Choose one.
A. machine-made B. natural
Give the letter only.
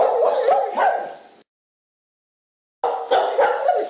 B